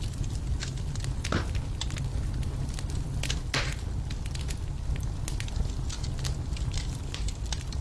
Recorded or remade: recorded